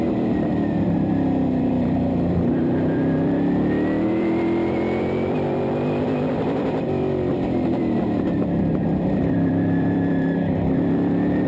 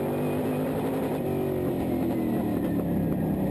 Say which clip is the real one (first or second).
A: second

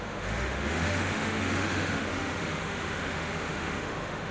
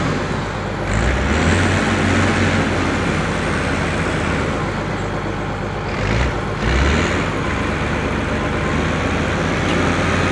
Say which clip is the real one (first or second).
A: second